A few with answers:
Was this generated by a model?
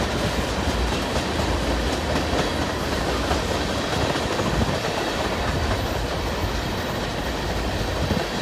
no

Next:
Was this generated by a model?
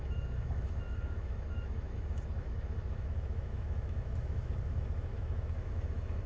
yes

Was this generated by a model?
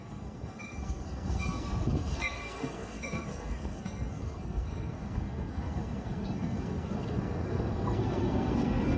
yes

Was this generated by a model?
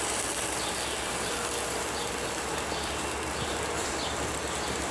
yes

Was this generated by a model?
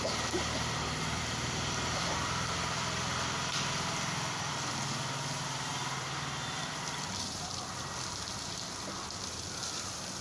yes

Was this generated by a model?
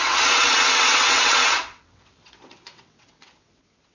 yes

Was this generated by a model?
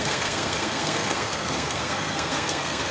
yes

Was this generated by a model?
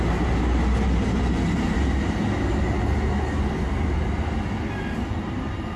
no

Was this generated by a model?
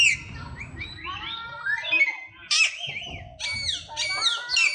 no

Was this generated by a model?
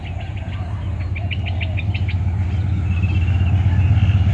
no